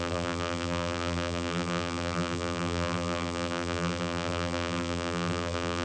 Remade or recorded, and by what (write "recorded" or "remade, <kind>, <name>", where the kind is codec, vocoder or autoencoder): remade, vocoder, BigVGAN v2